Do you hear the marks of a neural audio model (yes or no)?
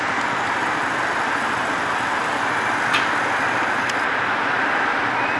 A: no